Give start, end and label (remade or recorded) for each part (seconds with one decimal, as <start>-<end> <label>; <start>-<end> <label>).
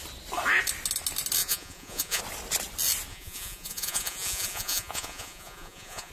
0.0-1.4 recorded; 1.4-2.2 remade; 2.2-3.1 recorded; 3.1-6.1 remade